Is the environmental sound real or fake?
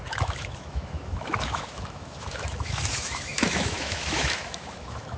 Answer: fake